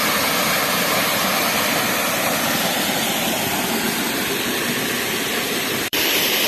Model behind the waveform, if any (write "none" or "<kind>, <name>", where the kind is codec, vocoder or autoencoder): vocoder, BigVGAN v2